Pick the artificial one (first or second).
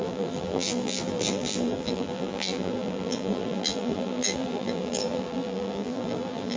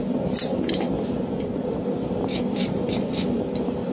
first